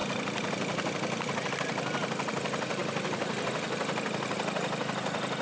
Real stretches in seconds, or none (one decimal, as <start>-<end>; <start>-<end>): 0.0-5.4